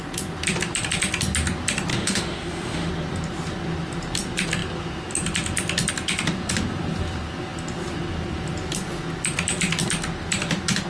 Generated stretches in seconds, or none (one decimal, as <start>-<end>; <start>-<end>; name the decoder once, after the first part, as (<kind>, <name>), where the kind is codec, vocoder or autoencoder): 1.9-2.9 (autoencoder, DAC-VAE)

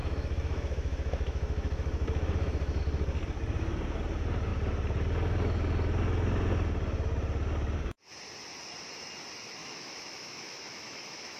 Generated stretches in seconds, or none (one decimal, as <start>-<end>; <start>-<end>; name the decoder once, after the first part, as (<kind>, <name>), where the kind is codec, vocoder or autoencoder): 0.0-2.8 (autoencoder, DAC-VAE); 9.6-11.4

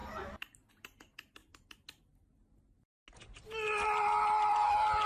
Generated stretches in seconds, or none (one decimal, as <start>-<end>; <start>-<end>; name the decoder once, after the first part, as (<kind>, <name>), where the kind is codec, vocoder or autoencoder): none

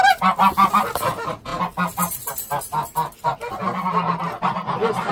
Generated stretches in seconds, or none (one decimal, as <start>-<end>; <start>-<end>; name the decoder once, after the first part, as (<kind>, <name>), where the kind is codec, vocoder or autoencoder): none

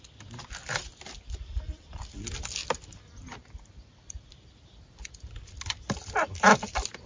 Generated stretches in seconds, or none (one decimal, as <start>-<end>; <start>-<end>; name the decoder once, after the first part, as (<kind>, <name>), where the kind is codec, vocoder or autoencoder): none

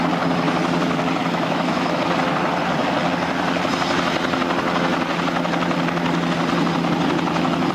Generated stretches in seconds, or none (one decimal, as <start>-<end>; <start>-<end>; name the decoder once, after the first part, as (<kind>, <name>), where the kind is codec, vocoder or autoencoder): 1.2-2.0 (autoencoder, DAC-VAE)

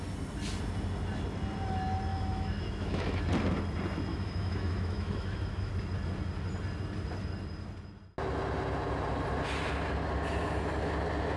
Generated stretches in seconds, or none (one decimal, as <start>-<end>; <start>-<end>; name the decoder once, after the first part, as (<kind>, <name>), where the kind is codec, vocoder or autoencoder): 2.1-3.2 (autoencoder, DAC-VAE); 4.1-5.7

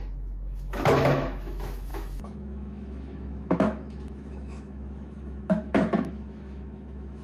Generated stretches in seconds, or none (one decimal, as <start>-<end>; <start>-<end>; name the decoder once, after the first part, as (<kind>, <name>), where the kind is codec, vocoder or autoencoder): 0.0-7.2 (autoencoder, DAC-VAE)